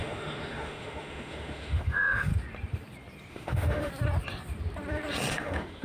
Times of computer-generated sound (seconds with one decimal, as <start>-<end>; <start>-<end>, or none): 0.0-2.3; 3.3-3.9; 5.3-5.8